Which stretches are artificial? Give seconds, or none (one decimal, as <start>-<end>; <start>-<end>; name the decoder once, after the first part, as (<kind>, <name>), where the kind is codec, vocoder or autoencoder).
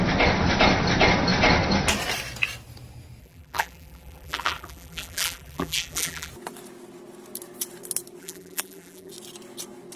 3.2-6.3 (vocoder, BigVGAN v2); 8.2-9.1